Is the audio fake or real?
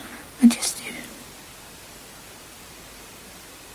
real